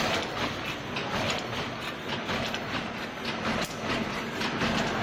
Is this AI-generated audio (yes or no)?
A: no